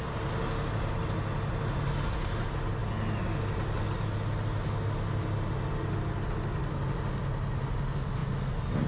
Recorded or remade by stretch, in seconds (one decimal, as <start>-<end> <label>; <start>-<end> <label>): 0.0-8.9 recorded